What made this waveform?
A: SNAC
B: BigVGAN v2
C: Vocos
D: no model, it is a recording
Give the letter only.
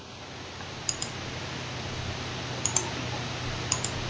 D